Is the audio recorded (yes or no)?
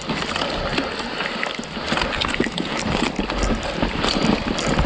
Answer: yes